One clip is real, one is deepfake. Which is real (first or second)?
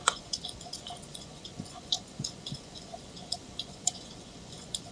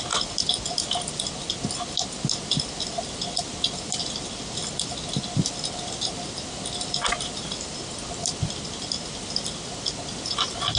second